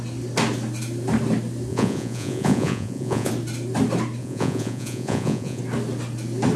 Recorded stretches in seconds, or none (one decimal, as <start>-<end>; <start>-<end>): 0.0-1.7; 3.3-4.2; 5.6-6.6